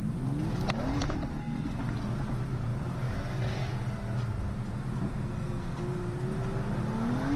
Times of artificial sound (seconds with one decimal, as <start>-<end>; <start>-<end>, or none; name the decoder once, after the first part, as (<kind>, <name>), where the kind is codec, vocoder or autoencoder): 1.3-1.8 (codec, SNAC); 5.1-5.8

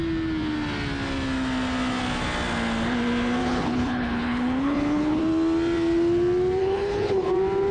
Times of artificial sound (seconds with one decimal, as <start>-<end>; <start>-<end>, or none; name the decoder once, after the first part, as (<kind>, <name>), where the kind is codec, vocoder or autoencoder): 3.4-5.2 (codec, HILCodec); 6.6-7.3

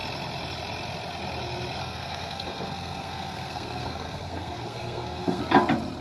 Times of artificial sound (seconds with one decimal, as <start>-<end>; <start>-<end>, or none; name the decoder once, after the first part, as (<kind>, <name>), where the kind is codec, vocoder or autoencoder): 1.8-5.4 (codec, SNAC)

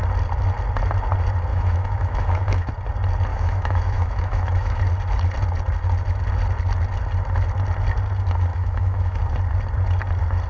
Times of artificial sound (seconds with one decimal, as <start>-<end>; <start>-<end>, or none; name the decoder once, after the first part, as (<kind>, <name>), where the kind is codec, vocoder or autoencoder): 1.5-2.7 (autoencoder, DAC-VAE); 3.3-4.8; 8.5-9.2

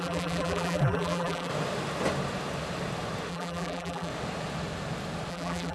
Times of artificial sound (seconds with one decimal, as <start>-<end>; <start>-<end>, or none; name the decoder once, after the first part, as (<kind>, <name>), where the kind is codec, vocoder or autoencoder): 0.0-1.5 (vocoder, BigVGAN v2); 3.3-4.1; 5.3-5.7

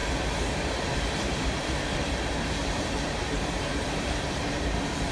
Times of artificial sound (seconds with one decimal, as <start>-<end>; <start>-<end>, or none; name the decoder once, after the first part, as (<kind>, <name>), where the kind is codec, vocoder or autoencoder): 0.0-5.1 (vocoder, BigVGAN v2)

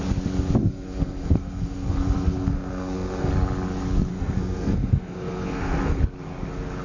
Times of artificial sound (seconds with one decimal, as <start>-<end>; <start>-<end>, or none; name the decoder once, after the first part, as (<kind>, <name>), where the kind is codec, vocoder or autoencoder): 0.6-3.3 (codec, SNAC); 4.1-6.0